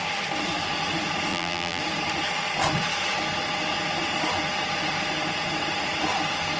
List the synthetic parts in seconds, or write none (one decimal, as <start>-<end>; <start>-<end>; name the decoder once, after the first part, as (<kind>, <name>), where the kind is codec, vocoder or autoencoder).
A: 1.3-1.8 (vocoder, BigVGAN v2)